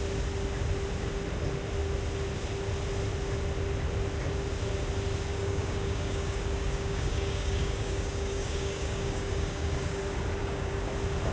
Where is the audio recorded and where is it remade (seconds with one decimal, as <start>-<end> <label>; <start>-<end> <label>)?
0.0-5.3 recorded; 5.3-10.0 remade; 10.0-10.4 recorded; 10.4-10.9 remade; 10.9-11.3 recorded